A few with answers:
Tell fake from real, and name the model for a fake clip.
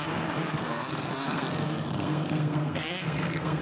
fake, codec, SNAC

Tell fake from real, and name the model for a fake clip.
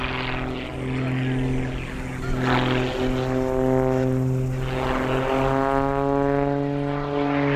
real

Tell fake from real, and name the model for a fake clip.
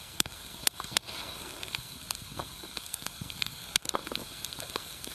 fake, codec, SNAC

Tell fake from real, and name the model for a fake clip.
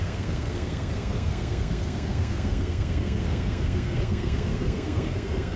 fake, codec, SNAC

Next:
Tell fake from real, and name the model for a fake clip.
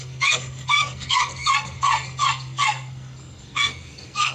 fake, codec, SNAC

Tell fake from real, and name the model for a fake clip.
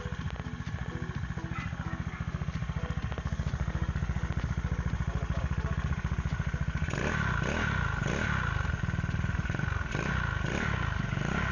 real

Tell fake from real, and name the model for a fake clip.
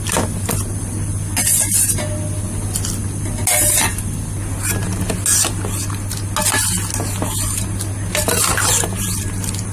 real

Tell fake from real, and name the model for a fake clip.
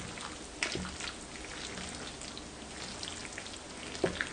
real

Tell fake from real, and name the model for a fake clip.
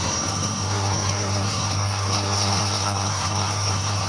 fake, codec, SNAC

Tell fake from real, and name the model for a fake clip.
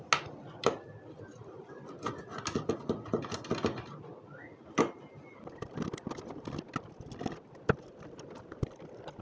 real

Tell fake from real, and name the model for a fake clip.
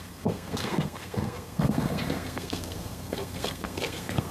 fake, codec, SNAC